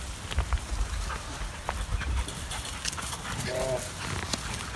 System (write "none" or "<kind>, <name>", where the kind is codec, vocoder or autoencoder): none